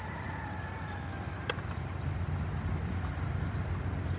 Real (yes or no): yes